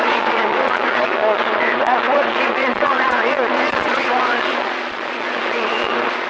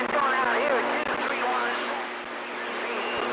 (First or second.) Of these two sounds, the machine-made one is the first